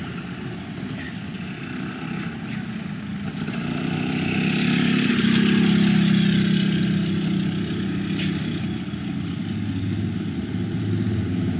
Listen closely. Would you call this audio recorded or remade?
recorded